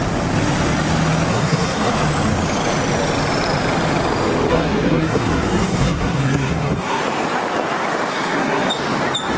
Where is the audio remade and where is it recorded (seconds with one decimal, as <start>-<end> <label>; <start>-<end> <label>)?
0.0-1.3 recorded; 1.3-1.9 remade; 1.9-4.5 recorded; 4.5-7.0 remade; 7.0-8.1 recorded; 8.1-8.7 remade; 8.7-9.4 recorded